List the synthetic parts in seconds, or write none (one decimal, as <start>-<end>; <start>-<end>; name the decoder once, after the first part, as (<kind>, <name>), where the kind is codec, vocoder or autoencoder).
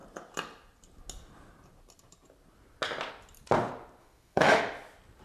4.0-4.6 (autoencoder, DAC-VAE)